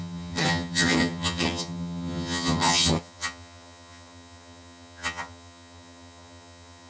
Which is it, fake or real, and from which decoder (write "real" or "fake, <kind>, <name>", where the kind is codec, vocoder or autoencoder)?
fake, vocoder, HiFi-GAN